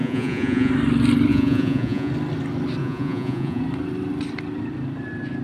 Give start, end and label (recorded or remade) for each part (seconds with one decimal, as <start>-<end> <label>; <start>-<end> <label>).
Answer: 0.0-0.7 remade; 0.7-1.3 recorded; 1.3-2.1 remade; 2.1-2.8 recorded; 2.8-3.6 remade; 3.6-5.4 recorded